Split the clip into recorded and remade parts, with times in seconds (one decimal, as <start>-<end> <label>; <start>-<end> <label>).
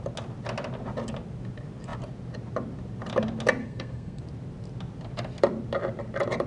0.0-3.6 recorded; 3.6-4.2 remade; 4.2-6.5 recorded